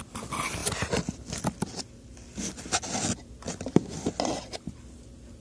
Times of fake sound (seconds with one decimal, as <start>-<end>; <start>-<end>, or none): none